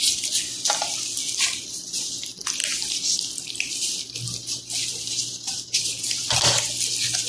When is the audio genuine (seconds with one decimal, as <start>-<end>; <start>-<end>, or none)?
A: 0.0-7.3